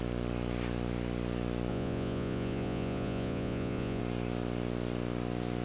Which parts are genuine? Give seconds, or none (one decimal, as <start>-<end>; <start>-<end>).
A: 0.0-1.7; 4.0-5.6